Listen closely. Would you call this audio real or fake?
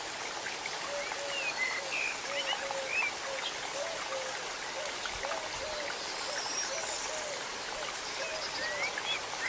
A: real